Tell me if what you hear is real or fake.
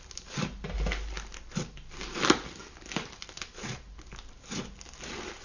real